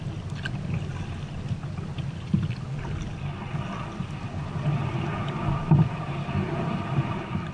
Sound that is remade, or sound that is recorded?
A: recorded